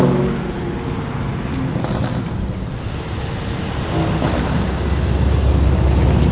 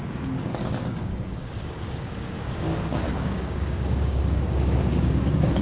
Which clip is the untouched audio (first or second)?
first